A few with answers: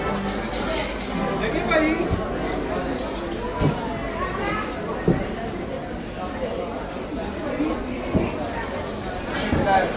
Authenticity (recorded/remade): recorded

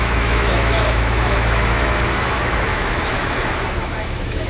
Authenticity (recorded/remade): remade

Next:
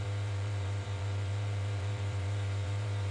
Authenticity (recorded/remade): remade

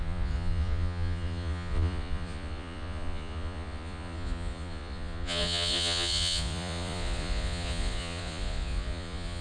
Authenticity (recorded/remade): remade